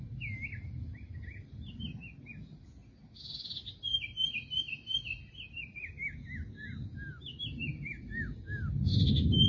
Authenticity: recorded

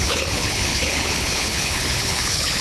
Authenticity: remade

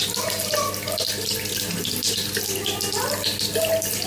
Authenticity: recorded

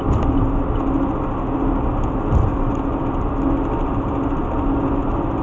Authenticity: recorded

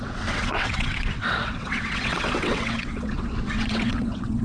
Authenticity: remade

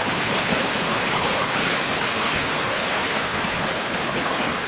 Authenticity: remade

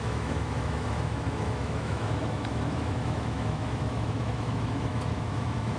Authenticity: remade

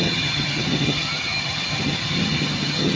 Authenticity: remade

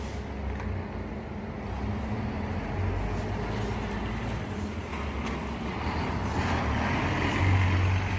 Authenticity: recorded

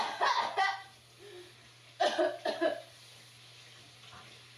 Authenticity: recorded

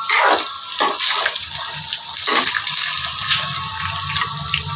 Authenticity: recorded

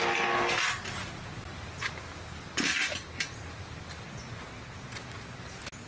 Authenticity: recorded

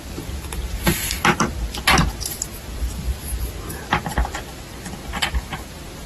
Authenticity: recorded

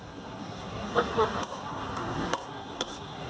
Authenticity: remade